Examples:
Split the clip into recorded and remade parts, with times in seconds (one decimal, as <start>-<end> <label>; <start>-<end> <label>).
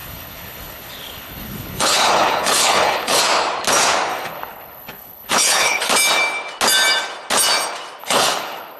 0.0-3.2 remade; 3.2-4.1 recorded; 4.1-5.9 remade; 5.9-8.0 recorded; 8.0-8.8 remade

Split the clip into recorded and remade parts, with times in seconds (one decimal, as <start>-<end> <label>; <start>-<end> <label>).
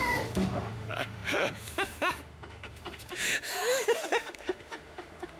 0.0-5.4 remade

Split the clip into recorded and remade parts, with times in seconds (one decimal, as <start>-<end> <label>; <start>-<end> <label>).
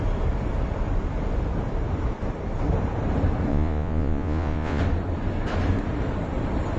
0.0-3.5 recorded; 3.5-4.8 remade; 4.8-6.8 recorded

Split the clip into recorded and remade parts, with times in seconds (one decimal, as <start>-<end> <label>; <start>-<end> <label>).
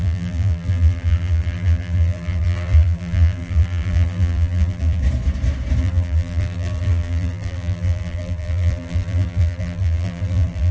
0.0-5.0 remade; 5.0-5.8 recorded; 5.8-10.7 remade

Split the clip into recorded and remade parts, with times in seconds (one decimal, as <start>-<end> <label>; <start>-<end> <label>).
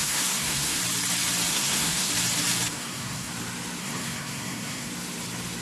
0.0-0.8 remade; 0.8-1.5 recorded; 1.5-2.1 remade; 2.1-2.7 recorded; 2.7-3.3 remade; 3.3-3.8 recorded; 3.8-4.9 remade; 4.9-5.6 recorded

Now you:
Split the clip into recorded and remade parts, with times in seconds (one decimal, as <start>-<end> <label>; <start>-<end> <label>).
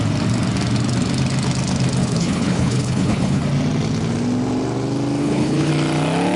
0.0-2.0 recorded; 2.0-3.4 remade; 3.4-5.2 recorded; 5.2-5.7 remade; 5.7-6.4 recorded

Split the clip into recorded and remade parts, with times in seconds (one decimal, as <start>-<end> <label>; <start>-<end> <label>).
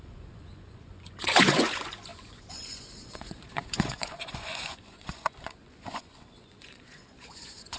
0.0-7.8 remade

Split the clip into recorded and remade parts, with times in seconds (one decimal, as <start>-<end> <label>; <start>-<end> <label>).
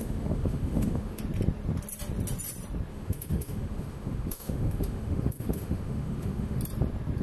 0.0-1.2 remade; 1.2-2.9 recorded; 2.9-6.6 remade; 6.6-7.2 recorded